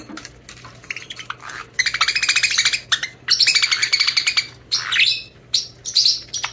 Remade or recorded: recorded